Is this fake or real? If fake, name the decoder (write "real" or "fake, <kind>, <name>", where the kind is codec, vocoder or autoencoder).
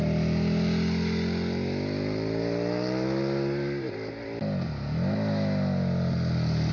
real